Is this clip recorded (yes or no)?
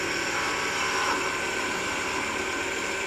no